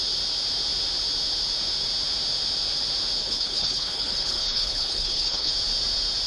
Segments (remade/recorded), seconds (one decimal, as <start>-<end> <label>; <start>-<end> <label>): 0.0-3.2 recorded; 3.2-5.5 remade; 5.5-6.3 recorded